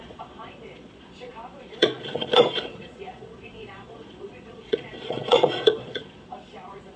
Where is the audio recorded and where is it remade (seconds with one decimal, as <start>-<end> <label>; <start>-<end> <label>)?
0.0-7.0 remade